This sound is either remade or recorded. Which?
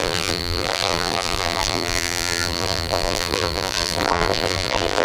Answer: remade